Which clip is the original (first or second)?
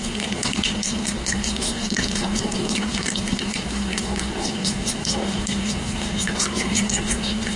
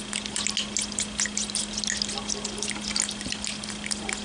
second